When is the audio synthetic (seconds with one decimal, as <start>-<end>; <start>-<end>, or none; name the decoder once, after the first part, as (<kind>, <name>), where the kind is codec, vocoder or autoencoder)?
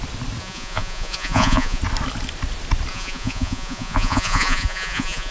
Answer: 0.4-1.8 (vocoder, Vocos); 2.9-5.3